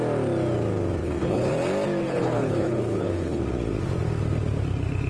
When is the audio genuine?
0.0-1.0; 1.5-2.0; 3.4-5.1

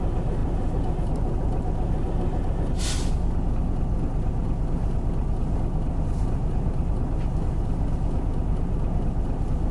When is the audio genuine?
0.0-9.7

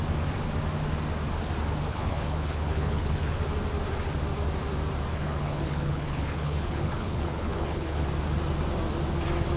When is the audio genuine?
0.0-1.9; 3.4-5.1; 8.1-9.6

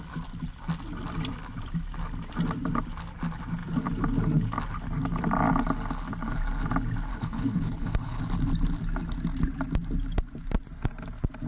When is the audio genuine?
0.0-7.1; 8.2-11.5

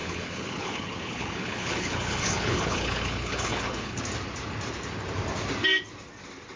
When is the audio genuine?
4.0-6.6

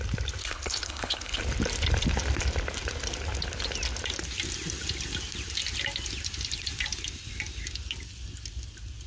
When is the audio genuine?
0.0-0.4; 1.4-9.1